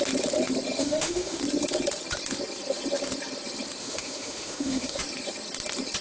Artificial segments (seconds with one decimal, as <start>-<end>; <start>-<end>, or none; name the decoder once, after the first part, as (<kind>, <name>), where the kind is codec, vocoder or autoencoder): 0.8-1.4 (autoencoder, DAC-VAE); 3.8-5.0